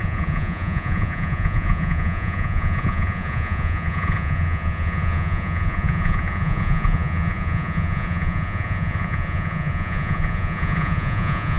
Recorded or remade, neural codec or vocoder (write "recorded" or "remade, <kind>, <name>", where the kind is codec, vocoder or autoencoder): remade, vocoder, Vocos